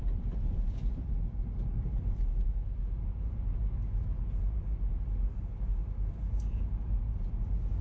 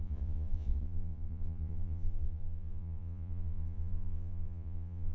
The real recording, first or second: first